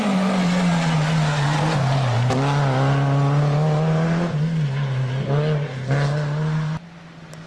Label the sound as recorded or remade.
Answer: recorded